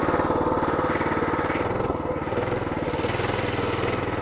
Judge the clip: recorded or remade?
recorded